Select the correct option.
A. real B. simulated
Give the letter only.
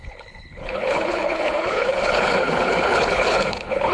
B